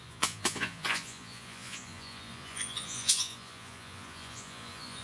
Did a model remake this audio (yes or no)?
yes